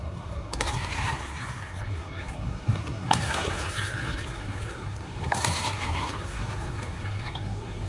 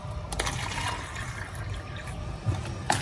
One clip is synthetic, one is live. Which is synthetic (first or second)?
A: first